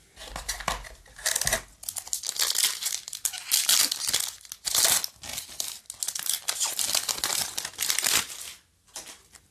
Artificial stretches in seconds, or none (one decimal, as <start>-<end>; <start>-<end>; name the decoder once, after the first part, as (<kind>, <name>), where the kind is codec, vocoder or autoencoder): none

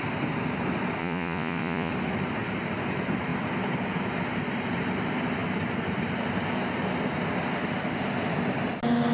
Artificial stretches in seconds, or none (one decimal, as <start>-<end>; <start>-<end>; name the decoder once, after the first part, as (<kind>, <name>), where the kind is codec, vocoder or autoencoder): 1.0-1.9 (vocoder, Vocos)

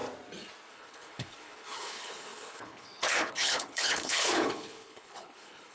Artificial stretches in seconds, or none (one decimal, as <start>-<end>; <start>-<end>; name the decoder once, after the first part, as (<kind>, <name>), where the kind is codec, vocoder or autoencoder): 0.7-5.7 (codec, HILCodec)

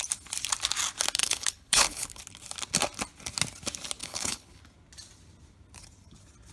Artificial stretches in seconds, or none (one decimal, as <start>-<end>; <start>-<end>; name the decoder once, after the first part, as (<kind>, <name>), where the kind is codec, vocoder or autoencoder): 1.2-2.2 (codec, HILCodec); 4.0-4.6